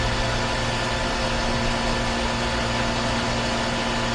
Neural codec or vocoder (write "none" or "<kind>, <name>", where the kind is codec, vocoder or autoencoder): none